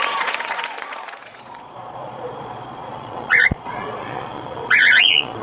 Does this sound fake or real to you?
fake